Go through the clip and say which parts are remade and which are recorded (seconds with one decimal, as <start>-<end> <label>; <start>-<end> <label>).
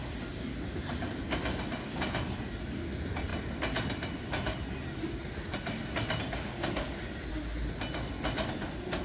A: 0.0-9.0 recorded